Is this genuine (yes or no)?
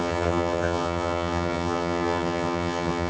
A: no